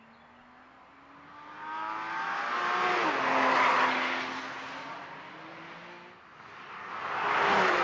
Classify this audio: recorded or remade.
recorded